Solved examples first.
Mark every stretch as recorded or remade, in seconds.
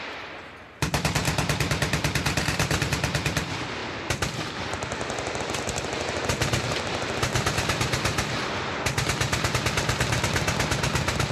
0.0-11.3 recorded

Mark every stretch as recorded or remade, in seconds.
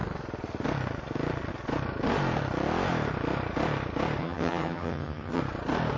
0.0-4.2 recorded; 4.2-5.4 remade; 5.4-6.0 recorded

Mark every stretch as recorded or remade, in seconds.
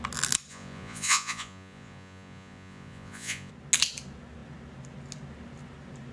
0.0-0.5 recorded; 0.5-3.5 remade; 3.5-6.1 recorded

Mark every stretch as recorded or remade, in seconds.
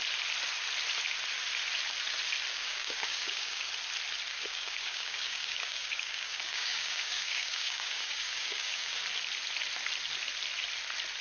0.0-2.5 recorded; 2.5-3.7 remade; 3.7-4.3 recorded; 4.3-9.0 remade; 9.0-11.2 recorded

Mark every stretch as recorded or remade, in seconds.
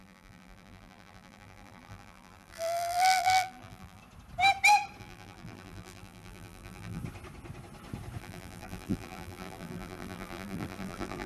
0.0-4.0 remade; 4.0-5.0 recorded; 5.0-7.0 remade; 7.0-8.2 recorded; 8.2-11.3 remade